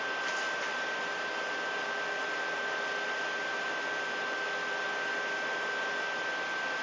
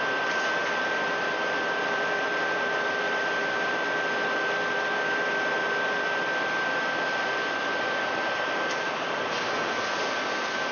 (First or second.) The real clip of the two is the first